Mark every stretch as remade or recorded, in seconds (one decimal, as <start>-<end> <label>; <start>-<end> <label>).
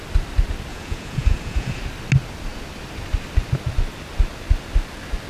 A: 0.0-0.7 recorded; 0.7-1.8 remade; 1.8-5.3 recorded